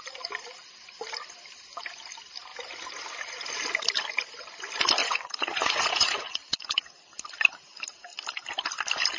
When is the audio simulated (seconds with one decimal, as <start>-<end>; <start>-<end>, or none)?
5.0-6.9